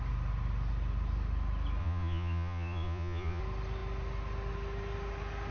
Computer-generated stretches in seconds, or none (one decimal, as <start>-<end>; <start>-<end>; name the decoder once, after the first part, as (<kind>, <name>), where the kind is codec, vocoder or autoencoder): 1.8-3.4 (vocoder, Vocos)